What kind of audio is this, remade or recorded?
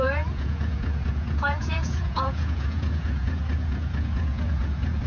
remade